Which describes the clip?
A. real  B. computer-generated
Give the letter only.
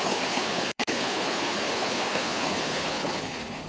B